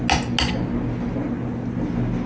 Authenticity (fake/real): real